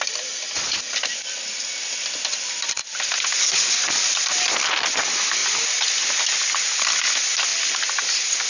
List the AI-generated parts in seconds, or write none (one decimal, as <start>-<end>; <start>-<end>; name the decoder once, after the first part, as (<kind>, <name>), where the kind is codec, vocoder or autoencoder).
5.4-6.5 (vocoder, BigVGAN v2)